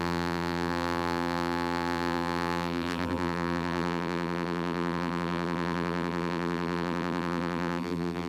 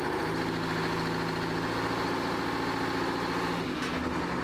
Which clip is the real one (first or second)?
second